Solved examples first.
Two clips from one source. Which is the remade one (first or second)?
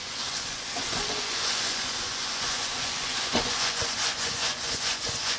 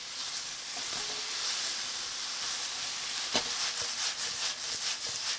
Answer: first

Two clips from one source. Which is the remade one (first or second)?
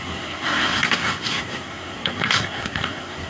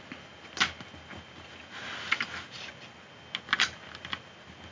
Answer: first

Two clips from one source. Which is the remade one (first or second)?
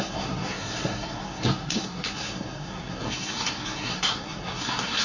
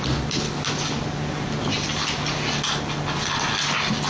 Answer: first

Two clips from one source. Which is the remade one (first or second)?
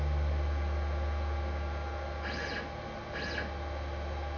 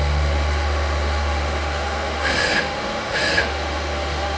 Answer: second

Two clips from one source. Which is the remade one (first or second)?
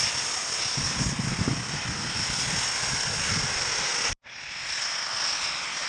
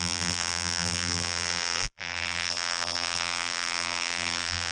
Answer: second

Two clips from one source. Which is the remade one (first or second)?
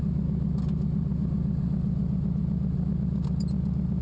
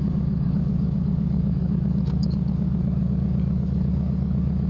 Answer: second